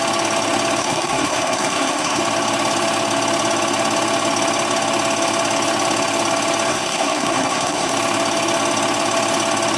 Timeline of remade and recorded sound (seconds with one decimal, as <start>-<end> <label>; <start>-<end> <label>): 0.0-0.8 recorded; 0.8-2.2 remade; 2.2-6.7 recorded; 6.7-7.9 remade; 7.9-9.8 recorded